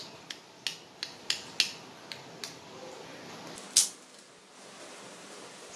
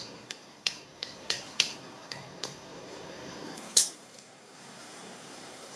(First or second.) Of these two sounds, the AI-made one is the second